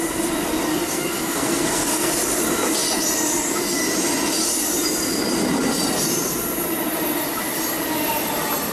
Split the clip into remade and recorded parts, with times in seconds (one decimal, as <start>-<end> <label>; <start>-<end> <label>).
0.0-0.7 recorded; 0.7-2.1 remade; 2.1-8.7 recorded

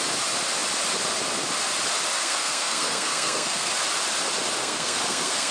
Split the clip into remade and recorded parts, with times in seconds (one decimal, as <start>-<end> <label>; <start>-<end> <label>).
0.0-2.2 recorded; 2.2-3.7 remade; 3.7-4.6 recorded; 4.6-5.5 remade

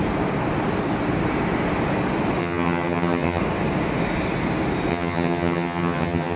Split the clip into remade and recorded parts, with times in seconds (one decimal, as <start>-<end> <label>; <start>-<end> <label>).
0.0-2.4 recorded; 2.4-3.4 remade; 3.4-4.9 recorded; 4.9-6.4 remade